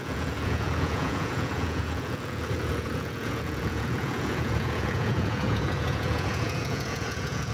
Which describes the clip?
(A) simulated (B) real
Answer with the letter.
A